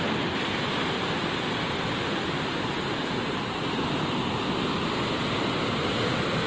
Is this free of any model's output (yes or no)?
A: yes